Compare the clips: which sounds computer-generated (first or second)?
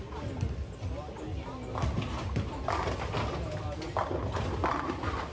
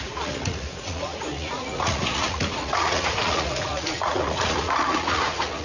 second